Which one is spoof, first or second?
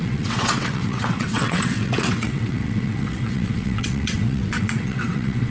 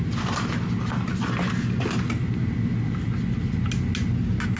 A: first